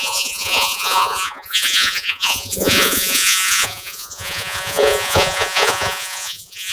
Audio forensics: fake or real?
fake